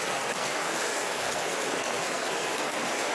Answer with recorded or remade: remade